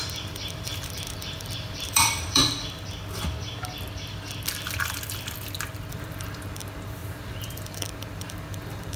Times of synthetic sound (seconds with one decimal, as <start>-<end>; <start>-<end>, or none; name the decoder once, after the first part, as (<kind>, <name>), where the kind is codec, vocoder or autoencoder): 0.0-2.4 (vocoder, BigVGAN v2); 5.9-9.0